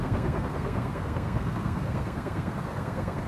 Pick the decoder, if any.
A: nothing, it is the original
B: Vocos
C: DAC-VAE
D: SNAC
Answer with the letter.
D